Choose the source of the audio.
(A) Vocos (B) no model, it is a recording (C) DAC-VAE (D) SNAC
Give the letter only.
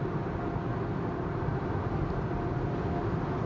B